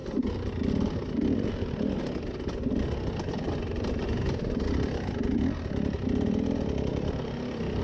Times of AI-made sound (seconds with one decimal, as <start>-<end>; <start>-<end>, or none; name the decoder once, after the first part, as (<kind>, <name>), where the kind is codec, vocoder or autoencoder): 0.0-2.2 (vocoder, BigVGAN v2); 6.9-7.8